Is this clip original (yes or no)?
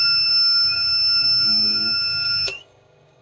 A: no